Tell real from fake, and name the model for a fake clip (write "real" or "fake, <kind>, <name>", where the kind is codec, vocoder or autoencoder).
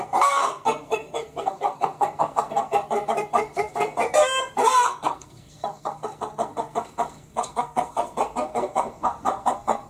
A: fake, codec, SNAC